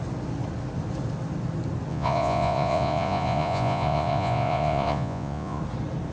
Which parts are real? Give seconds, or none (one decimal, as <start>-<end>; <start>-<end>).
0.0-1.9; 5.6-6.1